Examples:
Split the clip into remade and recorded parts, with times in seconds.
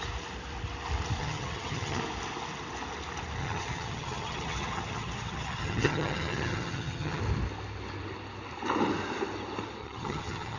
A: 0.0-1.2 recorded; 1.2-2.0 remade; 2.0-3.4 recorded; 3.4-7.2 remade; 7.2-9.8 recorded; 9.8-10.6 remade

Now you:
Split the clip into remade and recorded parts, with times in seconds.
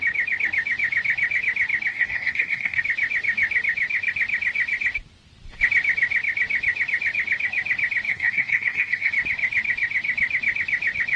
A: 0.0-1.9 recorded; 1.9-2.8 remade; 2.8-8.1 recorded; 8.1-9.1 remade; 9.1-11.2 recorded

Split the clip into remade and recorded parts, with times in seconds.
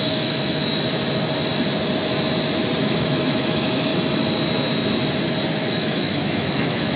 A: 0.0-0.7 remade; 0.7-2.8 recorded; 2.8-3.9 remade; 3.9-5.5 recorded; 5.5-7.0 remade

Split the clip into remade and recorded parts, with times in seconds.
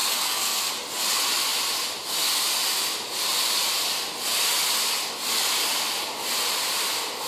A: 0.0-0.7 remade; 0.7-7.3 recorded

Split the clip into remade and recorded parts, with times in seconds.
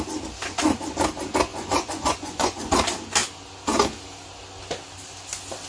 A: 0.0-1.5 recorded; 1.5-2.7 remade; 2.7-5.7 recorded